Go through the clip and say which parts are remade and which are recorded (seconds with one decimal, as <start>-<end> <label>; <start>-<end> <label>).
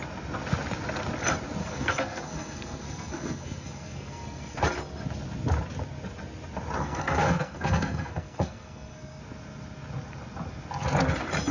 0.0-1.6 recorded; 1.6-4.6 remade; 4.6-6.8 recorded; 6.8-9.2 remade; 9.2-11.5 recorded